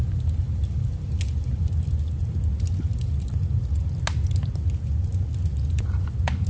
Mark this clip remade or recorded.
recorded